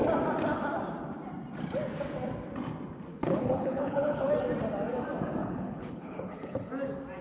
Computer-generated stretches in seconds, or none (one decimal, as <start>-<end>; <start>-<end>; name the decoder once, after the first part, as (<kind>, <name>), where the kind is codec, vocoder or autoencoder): 3.1-4.3 (codec, HILCodec); 5.4-6.7